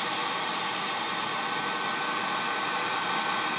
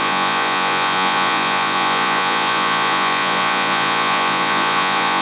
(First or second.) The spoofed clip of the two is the second